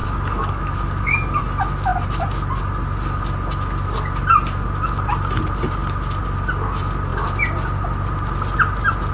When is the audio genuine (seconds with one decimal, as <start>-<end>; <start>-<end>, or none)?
1.4-9.1